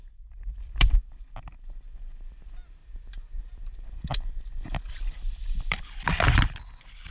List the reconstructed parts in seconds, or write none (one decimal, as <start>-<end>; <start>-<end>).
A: 2.8-5.8